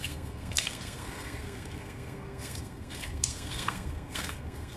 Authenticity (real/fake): fake